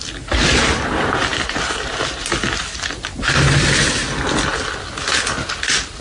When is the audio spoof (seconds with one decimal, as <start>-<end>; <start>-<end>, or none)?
none

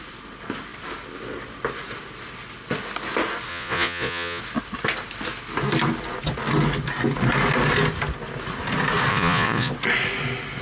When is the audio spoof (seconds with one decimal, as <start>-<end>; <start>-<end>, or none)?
3.5-4.4; 9.1-9.7

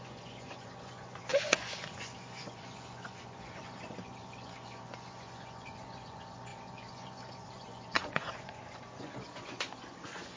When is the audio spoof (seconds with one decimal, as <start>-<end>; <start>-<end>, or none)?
0.0-10.4

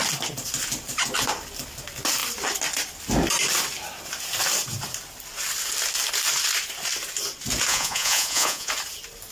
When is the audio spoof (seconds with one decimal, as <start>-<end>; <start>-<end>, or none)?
7.7-8.7

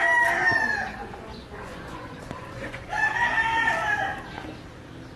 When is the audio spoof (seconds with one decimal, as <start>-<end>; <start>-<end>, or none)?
1.0-2.9